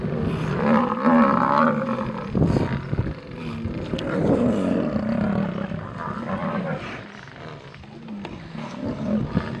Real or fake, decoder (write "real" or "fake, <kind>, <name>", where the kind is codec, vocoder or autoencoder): real